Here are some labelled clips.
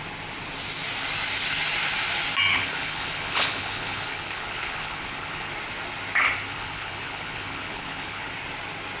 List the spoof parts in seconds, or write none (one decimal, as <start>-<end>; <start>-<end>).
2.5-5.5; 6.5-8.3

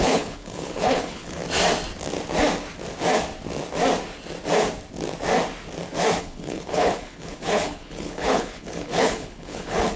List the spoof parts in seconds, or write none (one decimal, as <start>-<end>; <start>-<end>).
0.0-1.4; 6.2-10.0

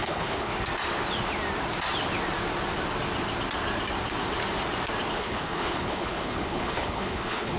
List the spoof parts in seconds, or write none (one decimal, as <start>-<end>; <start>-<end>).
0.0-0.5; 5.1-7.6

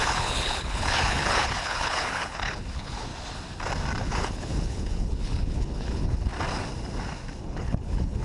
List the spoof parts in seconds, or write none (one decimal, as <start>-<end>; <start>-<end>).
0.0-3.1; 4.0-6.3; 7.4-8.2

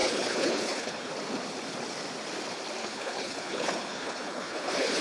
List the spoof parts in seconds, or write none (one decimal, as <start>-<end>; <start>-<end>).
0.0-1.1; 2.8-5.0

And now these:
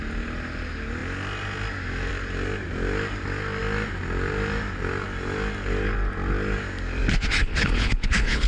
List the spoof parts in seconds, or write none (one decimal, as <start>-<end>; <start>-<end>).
7.4-8.5

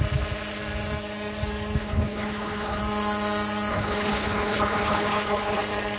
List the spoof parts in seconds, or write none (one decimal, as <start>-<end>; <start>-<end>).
1.8-2.8; 3.7-5.6